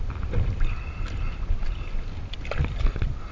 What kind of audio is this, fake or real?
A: real